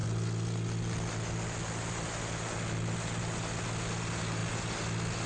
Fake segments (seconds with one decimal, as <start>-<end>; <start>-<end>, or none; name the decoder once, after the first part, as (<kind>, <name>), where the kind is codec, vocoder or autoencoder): none